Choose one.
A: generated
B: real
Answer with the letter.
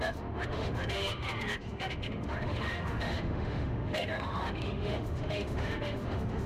A